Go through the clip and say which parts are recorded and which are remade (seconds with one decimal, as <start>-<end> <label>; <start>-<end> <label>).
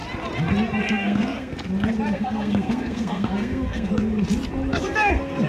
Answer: 0.0-0.8 recorded; 0.8-1.5 remade; 1.5-2.1 recorded; 2.1-3.9 remade; 3.9-4.7 recorded; 4.7-5.5 remade